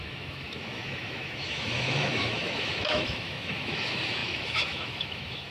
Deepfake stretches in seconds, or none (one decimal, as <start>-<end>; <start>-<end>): 0.0-5.5